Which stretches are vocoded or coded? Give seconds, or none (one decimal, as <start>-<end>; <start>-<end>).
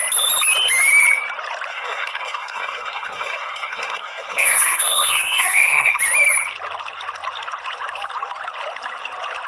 1.7-6.0